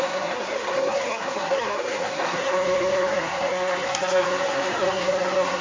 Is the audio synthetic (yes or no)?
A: yes